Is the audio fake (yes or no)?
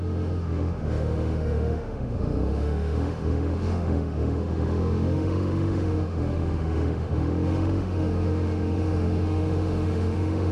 yes